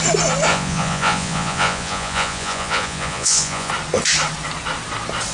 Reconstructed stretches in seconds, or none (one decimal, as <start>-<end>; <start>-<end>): 0.5-3.7